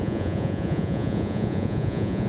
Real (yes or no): no